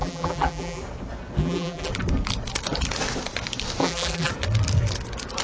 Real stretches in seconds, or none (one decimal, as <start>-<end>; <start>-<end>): 0.8-1.4; 1.9-3.8; 4.3-5.4